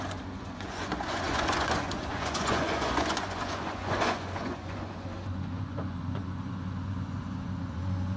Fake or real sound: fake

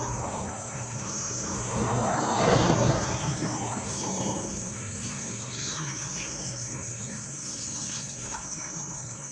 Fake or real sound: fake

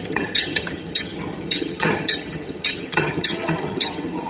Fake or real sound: fake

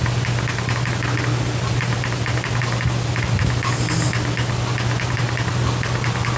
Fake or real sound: real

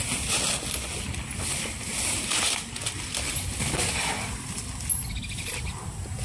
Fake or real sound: real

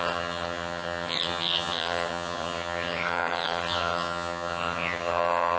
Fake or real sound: fake